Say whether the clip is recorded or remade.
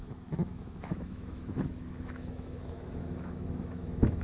remade